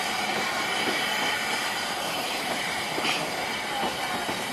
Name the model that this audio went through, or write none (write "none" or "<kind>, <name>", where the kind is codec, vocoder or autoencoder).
vocoder, BigVGAN v2